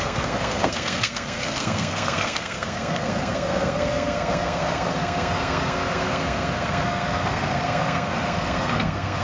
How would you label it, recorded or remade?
remade